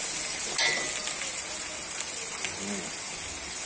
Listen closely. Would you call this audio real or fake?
real